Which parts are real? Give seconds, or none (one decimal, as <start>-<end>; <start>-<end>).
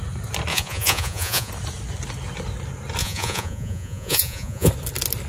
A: 0.0-0.5; 1.5-3.0; 4.7-5.3